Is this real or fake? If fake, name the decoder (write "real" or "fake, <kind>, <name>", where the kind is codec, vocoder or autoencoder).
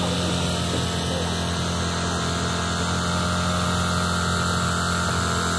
real